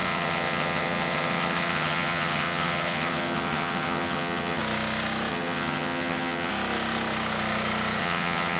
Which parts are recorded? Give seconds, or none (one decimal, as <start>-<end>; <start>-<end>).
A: 4.6-5.3; 6.5-8.0